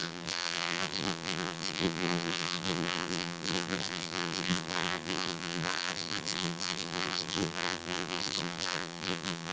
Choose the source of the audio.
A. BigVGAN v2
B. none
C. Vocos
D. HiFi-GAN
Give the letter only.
A